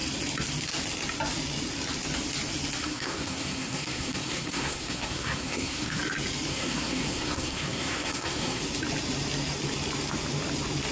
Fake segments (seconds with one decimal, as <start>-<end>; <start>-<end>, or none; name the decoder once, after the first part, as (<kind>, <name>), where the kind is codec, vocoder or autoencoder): 2.8-6.0 (codec, SNAC); 6.5-8.6